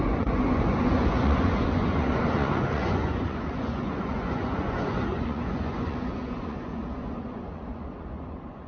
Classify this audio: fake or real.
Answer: fake